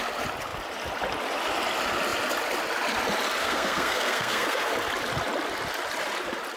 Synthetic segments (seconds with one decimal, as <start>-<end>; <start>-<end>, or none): 3.4-4.7